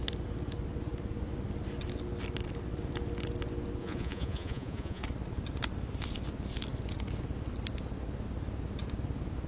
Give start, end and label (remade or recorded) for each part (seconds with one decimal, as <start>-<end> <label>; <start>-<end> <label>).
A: 0.0-3.8 recorded; 3.8-5.0 remade; 5.0-9.5 recorded